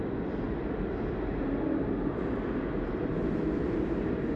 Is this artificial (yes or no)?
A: no